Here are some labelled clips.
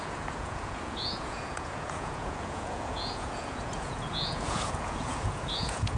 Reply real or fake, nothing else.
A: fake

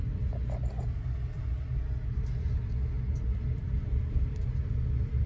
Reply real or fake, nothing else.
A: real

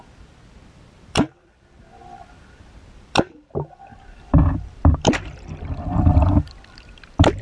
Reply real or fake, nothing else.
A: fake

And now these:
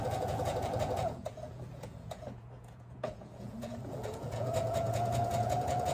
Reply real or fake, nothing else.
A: fake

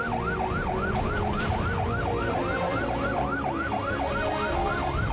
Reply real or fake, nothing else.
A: real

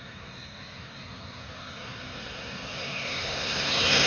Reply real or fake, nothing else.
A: fake